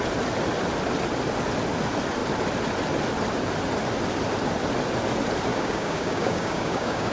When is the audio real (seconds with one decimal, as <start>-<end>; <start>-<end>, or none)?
0.0-5.5